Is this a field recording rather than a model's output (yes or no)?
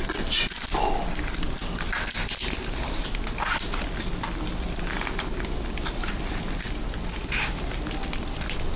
yes